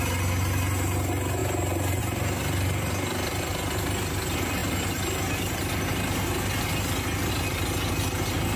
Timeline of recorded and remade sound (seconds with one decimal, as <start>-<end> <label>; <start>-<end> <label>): 0.0-8.6 recorded